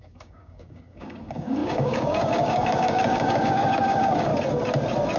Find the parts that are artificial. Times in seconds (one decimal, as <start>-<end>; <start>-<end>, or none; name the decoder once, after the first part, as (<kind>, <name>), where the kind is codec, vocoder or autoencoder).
0.0-4.3 (codec, DAC)